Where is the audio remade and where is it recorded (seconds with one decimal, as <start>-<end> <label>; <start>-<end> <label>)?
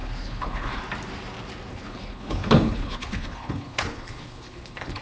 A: 0.0-0.8 remade; 0.8-1.7 recorded; 1.7-5.0 remade